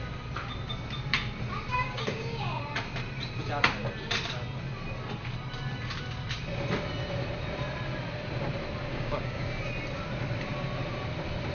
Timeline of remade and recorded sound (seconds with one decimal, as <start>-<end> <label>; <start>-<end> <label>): 0.0-1.7 recorded; 1.7-2.6 remade; 2.6-8.9 recorded; 8.9-9.6 remade; 9.6-11.5 recorded